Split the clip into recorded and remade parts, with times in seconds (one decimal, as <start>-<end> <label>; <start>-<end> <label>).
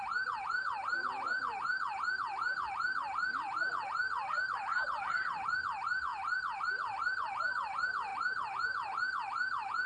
0.0-9.9 recorded